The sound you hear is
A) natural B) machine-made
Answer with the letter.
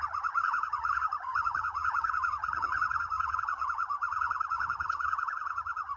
B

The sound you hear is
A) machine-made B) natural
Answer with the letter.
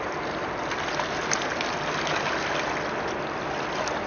B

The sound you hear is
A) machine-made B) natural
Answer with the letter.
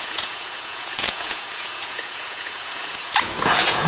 A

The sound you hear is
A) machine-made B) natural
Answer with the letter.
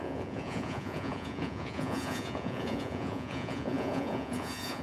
A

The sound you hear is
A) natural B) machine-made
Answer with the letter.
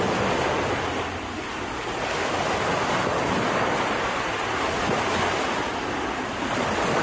A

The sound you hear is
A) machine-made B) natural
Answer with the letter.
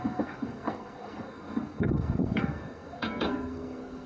A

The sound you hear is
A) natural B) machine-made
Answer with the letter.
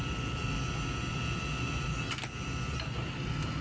A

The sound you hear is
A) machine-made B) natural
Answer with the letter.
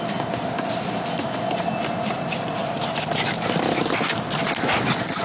B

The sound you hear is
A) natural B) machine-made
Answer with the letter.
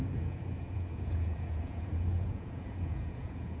B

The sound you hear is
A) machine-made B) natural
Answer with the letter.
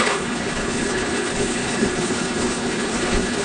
A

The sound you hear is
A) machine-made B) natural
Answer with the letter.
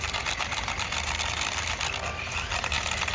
B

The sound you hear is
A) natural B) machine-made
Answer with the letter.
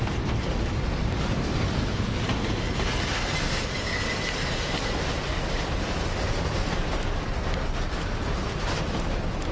A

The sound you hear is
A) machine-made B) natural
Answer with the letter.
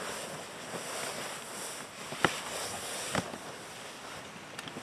B